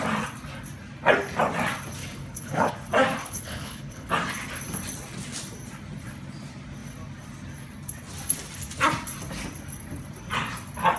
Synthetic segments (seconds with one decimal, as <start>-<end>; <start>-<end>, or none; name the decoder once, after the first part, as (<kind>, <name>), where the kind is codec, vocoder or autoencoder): 2.0-2.7 (codec, HILCodec); 3.2-4.1